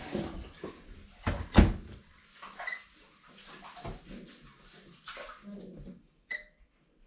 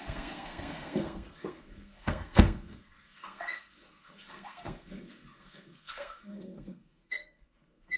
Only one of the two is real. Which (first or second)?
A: first